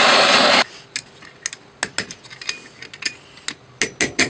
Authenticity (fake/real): real